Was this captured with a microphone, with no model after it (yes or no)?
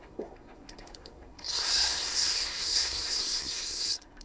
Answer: no